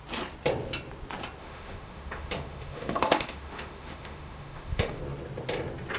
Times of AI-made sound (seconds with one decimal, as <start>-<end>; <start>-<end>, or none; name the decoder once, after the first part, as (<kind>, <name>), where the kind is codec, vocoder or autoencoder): 1.4-5.0 (autoencoder, DAC-VAE)